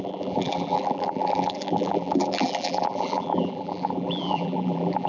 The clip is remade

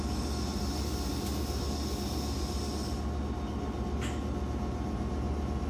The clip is recorded